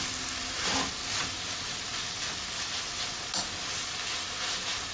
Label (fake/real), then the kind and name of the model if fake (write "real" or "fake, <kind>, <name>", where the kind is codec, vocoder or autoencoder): real